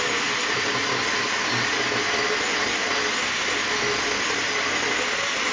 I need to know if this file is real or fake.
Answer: real